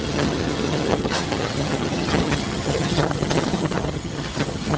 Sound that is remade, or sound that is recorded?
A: remade